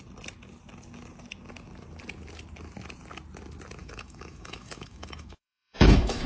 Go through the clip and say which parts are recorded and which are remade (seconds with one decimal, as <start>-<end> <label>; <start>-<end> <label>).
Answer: 0.0-3.8 recorded; 3.8-6.3 remade